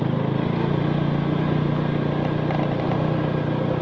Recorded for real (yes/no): yes